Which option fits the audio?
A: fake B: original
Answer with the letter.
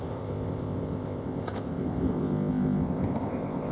A